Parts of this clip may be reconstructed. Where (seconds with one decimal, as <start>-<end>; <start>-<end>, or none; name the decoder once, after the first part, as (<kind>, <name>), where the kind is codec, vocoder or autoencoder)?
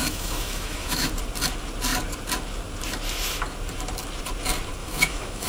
0.0-1.1 (autoencoder, DAC-VAE); 4.8-5.5